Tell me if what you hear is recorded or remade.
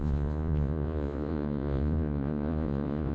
remade